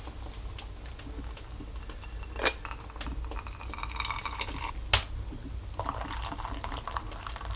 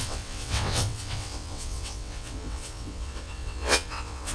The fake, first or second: second